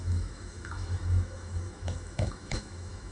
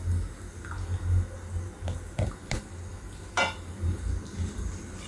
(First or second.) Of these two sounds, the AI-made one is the first